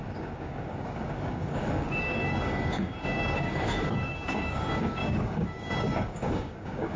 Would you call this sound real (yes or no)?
no